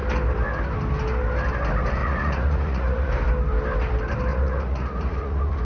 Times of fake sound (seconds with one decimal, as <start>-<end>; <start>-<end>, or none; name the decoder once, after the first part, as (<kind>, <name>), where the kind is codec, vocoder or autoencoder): 2.0-3.1 (vocoder, Vocos); 4.3-5.6